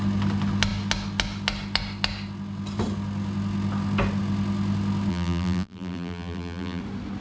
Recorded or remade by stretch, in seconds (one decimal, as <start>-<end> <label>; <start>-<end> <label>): 0.0-5.1 recorded; 5.1-6.8 remade; 6.8-7.2 recorded